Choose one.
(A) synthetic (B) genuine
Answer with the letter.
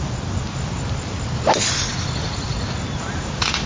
B